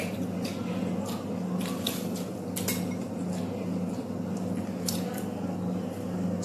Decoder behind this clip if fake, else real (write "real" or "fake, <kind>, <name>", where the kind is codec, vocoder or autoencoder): real